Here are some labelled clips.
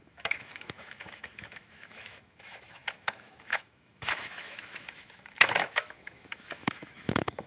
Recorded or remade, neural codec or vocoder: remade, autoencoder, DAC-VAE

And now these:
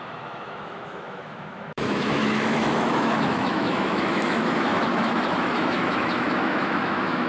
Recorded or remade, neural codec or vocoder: remade, autoencoder, DAC-VAE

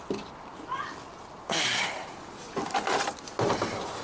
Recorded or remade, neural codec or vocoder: recorded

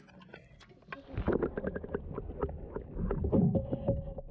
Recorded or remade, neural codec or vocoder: recorded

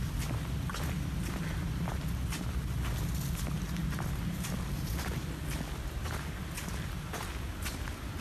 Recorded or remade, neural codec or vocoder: recorded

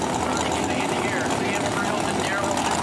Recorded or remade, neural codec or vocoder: recorded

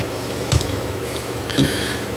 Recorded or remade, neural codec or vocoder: remade, autoencoder, DAC-VAE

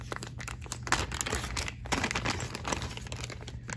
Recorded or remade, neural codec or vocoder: recorded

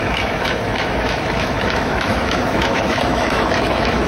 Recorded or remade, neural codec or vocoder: remade, autoencoder, DAC-VAE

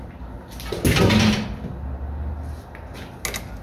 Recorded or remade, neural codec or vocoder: recorded